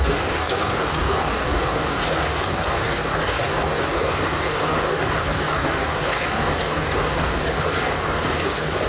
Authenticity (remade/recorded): remade